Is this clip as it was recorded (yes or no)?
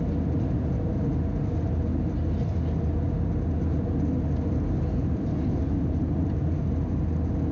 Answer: yes